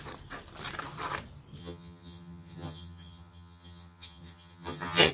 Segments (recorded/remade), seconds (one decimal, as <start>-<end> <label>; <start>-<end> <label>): 0.0-1.6 recorded; 1.6-5.1 remade